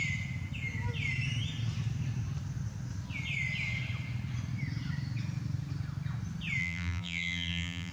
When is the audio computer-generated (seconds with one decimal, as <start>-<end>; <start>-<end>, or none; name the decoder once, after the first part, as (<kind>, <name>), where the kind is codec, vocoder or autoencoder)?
6.6-7.9 (vocoder, BigVGAN v2)